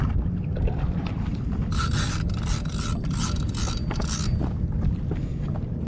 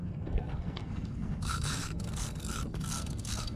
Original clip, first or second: first